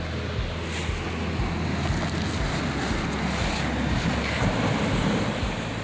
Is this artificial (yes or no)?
no